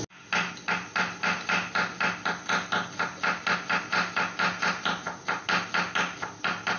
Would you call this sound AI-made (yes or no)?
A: no